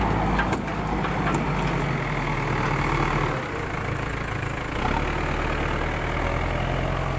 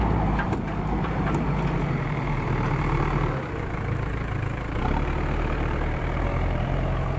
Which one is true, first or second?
first